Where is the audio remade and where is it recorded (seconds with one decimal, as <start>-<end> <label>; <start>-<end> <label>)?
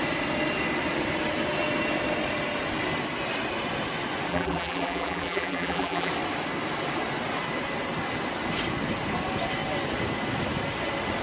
0.0-4.3 recorded; 4.3-6.1 remade; 6.1-11.2 recorded